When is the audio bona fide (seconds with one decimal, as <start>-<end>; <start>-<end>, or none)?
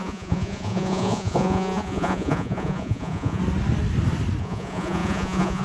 3.4-4.4